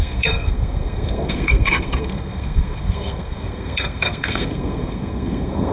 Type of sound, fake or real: fake